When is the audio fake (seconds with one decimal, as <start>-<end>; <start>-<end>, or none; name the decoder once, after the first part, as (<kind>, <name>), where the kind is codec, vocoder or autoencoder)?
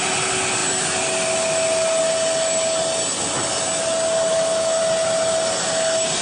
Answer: 4.3-4.8 (autoencoder, DAC-VAE)